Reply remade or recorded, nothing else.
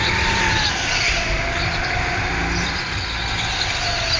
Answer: recorded